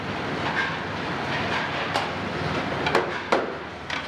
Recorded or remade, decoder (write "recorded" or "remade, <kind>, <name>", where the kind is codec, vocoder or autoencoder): recorded